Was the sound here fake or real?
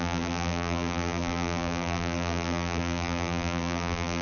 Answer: fake